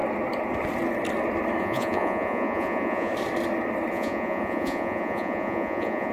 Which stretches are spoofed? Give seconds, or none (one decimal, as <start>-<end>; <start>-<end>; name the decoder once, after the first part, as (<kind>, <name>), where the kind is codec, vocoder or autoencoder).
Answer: 1.6-3.1 (vocoder, Vocos); 3.9-6.1